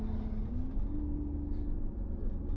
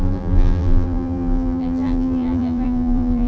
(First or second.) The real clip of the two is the first